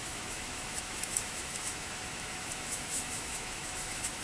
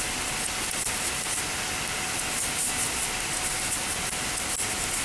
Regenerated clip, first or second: first